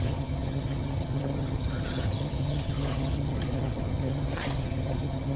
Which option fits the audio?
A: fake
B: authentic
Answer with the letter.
A